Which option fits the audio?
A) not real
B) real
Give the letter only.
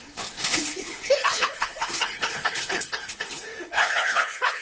A